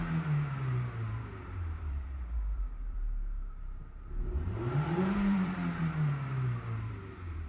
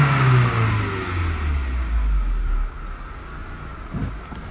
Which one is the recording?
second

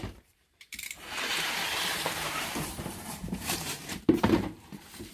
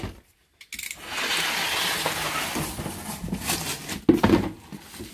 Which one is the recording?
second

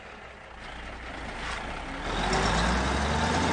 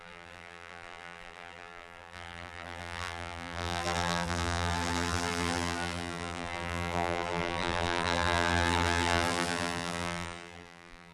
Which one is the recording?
first